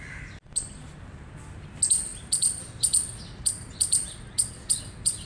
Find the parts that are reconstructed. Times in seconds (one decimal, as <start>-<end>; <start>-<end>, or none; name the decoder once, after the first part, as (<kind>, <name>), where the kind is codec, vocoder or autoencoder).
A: none